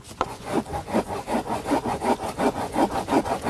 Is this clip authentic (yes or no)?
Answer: no